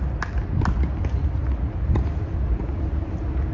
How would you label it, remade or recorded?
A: recorded